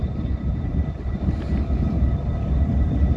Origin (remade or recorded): recorded